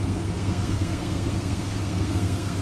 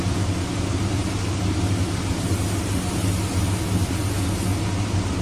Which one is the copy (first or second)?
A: first